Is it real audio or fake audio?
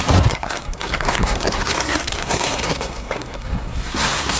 fake